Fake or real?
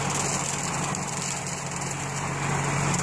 real